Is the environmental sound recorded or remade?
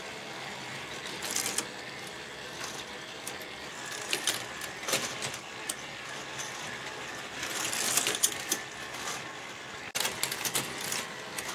recorded